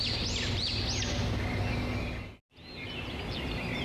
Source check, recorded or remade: recorded